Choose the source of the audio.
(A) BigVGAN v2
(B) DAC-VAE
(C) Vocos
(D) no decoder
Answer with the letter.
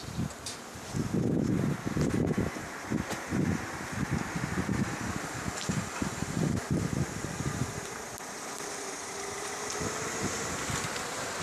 A